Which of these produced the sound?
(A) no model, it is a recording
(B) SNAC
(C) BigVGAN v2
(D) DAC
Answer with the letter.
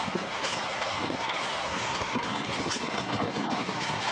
B